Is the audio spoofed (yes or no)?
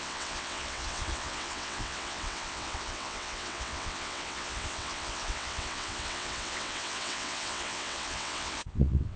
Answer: yes